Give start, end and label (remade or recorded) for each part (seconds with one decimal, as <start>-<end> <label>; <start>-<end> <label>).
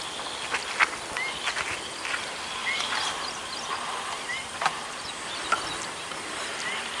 0.0-2.6 recorded; 2.6-5.5 remade; 5.5-7.0 recorded